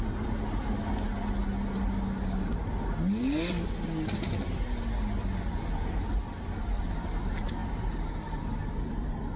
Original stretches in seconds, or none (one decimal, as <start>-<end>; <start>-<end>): 0.0-9.4